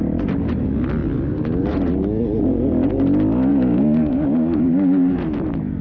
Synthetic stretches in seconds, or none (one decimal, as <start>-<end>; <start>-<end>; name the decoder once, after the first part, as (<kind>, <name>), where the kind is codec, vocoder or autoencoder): 3.5-5.1 (codec, DAC)